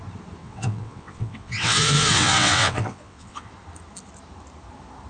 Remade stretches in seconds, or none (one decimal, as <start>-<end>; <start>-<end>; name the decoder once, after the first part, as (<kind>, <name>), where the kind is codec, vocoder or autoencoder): 0.4-3.5 (vocoder, WaveNeXt)